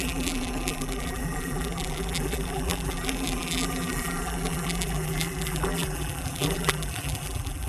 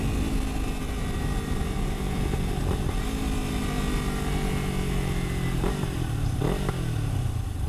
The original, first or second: second